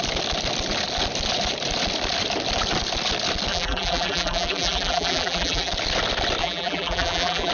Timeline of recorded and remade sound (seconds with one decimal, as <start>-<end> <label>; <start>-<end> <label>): 0.0-3.5 recorded; 3.5-5.7 remade; 5.7-6.4 recorded; 6.4-7.5 remade

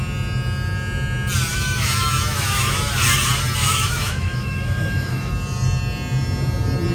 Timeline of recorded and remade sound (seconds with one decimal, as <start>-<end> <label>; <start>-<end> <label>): 0.0-1.5 recorded; 1.5-2.9 remade; 2.9-3.6 recorded; 3.6-5.3 remade; 5.3-6.9 recorded

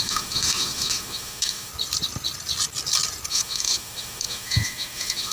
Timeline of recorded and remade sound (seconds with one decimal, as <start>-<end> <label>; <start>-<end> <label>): 0.0-1.7 remade; 1.7-3.3 recorded; 3.3-5.3 remade

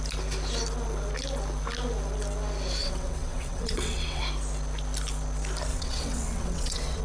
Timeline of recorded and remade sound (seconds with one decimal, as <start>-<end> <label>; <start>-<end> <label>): 0.0-2.8 recorded; 2.8-4.2 remade; 4.2-5.7 recorded; 5.7-7.0 remade

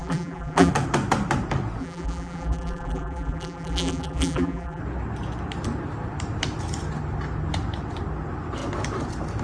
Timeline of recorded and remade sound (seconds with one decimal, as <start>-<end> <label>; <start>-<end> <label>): 0.0-0.7 remade; 0.7-1.8 recorded; 1.8-4.8 remade; 4.8-9.4 recorded

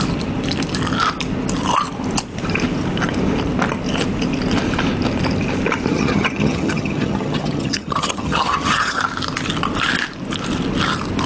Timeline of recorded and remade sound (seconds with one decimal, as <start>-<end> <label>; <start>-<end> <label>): 0.0-5.9 recorded; 5.9-9.0 remade; 9.0-11.3 recorded

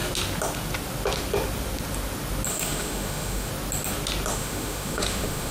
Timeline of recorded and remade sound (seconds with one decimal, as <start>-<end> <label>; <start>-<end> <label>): 0.0-2.5 recorded; 2.5-3.5 remade; 3.5-4.3 recorded; 4.3-5.5 remade